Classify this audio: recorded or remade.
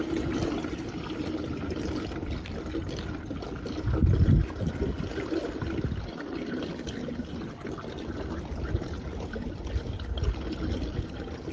recorded